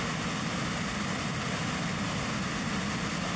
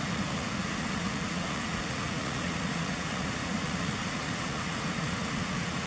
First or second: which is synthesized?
second